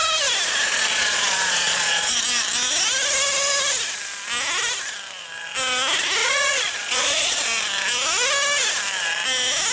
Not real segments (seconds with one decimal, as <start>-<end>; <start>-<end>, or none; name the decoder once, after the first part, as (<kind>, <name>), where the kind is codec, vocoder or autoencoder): 0.9-2.2 (vocoder, Vocos); 6.2-7.4